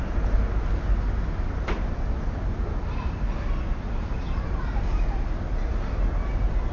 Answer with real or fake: real